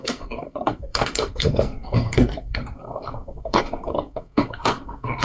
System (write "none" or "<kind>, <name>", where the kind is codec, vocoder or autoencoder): codec, SNAC